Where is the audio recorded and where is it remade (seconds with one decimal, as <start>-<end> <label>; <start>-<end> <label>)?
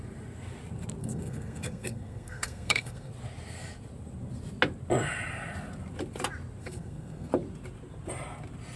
0.0-1.0 recorded; 1.0-3.1 remade; 3.1-6.6 recorded; 6.6-7.3 remade; 7.3-8.8 recorded